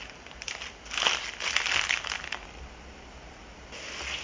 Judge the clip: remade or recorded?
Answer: recorded